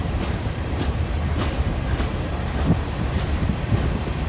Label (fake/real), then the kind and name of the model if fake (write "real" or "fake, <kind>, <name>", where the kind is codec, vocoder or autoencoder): fake, vocoder, BigVGAN v2